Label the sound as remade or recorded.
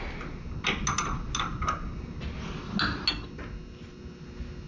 recorded